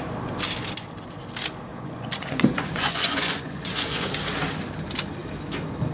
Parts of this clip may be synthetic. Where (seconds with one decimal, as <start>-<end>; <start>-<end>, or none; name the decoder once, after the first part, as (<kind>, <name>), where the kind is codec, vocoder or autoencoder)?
1.7-4.1 (vocoder, Vocos)